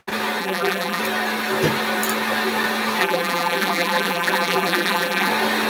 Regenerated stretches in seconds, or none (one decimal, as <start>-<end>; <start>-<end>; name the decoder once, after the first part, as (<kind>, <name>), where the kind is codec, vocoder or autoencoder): 0.4-1.0 (vocoder, BigVGAN v2); 3.0-5.3